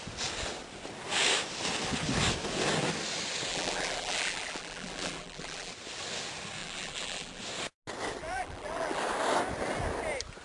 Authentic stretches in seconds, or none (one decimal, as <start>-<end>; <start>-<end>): 0.0-3.5; 5.7-6.6; 7.4-8.2; 9.0-10.4